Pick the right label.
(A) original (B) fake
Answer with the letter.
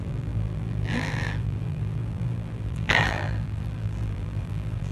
B